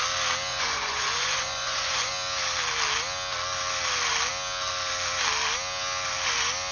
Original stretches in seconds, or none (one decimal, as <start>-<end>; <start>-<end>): 0.0-0.5; 2.1-6.7